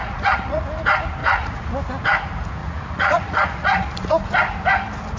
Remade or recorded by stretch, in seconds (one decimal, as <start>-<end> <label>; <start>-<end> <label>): 0.0-0.6 remade; 0.6-1.2 recorded; 1.2-1.7 remade; 1.7-2.6 recorded; 2.6-4.3 remade; 4.3-5.2 recorded